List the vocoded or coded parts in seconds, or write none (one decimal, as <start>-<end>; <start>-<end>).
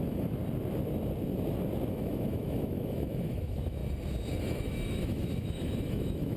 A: 0.0-0.4; 1.9-3.8; 4.4-6.4